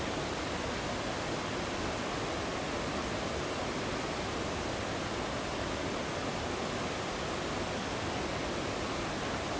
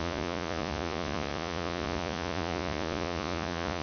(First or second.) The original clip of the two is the first